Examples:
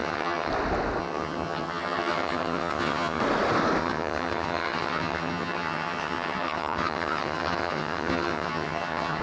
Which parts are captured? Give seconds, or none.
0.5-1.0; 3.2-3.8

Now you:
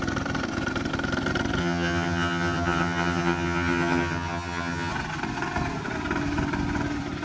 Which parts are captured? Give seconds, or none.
0.0-1.6; 4.9-7.2

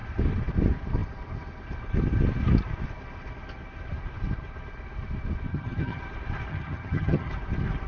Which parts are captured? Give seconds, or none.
0.0-5.5; 6.0-6.5; 7.3-7.9

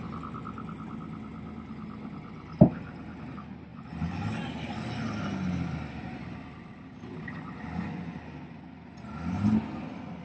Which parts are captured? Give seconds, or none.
0.0-10.2

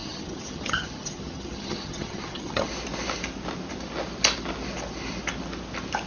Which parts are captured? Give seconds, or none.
2.7-6.1